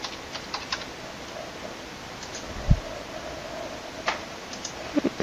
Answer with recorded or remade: recorded